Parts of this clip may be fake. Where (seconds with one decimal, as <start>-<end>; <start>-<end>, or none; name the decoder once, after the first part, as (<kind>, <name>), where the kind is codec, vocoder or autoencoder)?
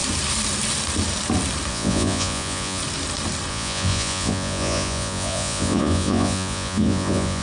1.7-2.8 (vocoder, Vocos); 3.5-7.4